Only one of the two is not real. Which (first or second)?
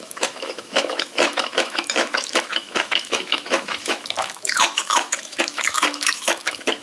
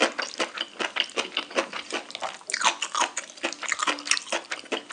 first